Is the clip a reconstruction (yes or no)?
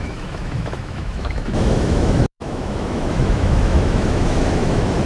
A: yes